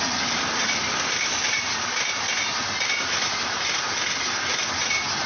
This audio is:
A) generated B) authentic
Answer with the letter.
B